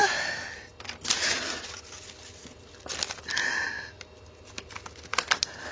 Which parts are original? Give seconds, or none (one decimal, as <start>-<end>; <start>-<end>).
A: 0.0-5.7